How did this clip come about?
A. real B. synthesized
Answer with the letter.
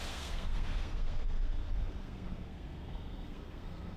B